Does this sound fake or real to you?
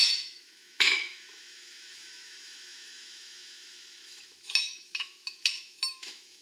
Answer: fake